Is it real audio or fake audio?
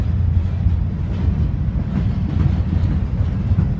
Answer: real